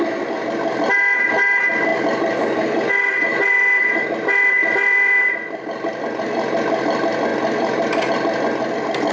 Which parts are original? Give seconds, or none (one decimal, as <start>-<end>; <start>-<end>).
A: 0.0-3.3; 4.1-4.6; 6.2-7.3; 8.1-9.1